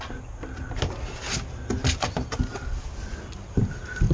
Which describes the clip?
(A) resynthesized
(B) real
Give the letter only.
B